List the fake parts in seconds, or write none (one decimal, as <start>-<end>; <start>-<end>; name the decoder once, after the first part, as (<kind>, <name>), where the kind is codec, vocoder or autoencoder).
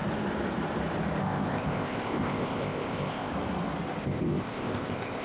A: 1.2-3.3 (codec, ZipCodec); 4.0-5.2